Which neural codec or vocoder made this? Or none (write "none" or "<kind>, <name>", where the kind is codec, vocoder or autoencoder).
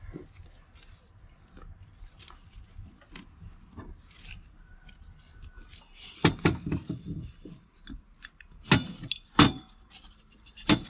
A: none